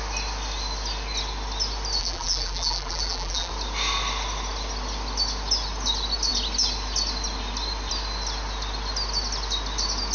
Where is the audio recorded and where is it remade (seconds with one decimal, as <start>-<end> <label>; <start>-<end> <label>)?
0.0-2.0 recorded; 2.0-3.5 remade; 3.5-10.1 recorded